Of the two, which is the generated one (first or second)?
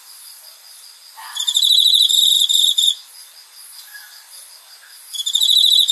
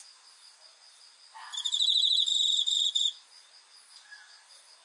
first